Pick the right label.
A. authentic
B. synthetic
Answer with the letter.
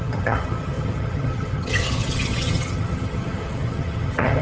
B